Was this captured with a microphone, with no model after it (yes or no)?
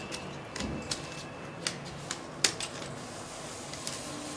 yes